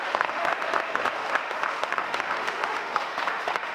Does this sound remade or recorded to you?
remade